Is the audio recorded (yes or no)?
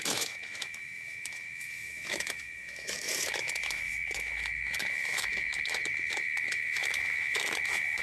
no